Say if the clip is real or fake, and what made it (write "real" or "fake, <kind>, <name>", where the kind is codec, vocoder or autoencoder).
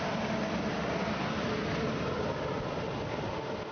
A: real